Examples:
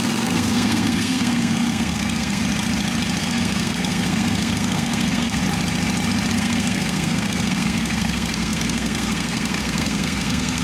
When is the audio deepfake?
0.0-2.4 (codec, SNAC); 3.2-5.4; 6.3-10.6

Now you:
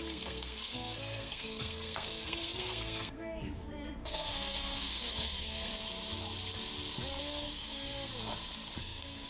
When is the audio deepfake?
0.0-5.7 (codec, SNAC); 7.2-8.1; 8.8-9.3

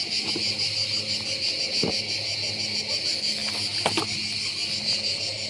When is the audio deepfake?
none

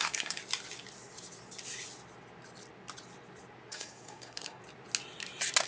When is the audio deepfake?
0.0-0.4 (codec, SNAC); 3.7-4.6

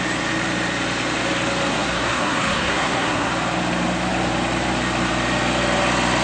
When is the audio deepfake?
1.7-3.3 (codec, SNAC)

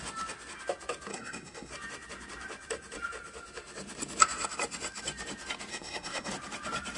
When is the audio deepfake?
1.1-1.7 (codec, SNAC); 5.7-6.3